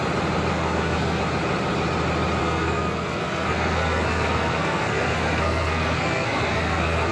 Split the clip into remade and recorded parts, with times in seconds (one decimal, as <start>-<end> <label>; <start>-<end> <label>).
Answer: 0.0-0.5 recorded; 0.5-1.2 remade; 1.2-2.4 recorded; 2.4-7.1 remade